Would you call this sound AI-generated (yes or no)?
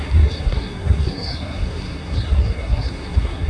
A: yes